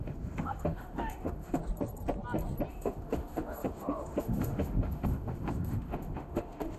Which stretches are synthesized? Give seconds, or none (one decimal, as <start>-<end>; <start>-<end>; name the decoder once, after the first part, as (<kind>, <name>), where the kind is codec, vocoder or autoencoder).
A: 0.0-1.6 (autoencoder, DAC-VAE); 2.7-6.8